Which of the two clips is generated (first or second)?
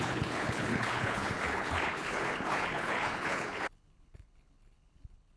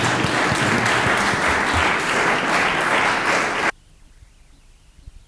first